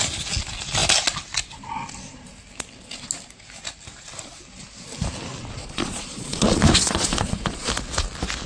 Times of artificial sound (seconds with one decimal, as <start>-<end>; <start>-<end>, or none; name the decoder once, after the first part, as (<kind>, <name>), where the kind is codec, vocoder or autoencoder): 5.6-7.7 (vocoder, Vocos)